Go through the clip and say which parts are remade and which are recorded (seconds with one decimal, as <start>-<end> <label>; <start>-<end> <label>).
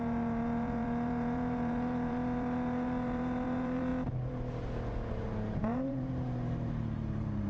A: 0.0-3.9 remade; 3.9-5.1 recorded; 5.1-7.5 remade